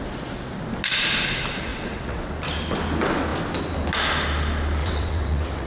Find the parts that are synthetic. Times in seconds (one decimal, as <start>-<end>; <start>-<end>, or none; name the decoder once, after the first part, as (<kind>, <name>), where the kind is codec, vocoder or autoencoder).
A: 1.7-2.3 (vocoder, WaveNeXt); 4.8-5.7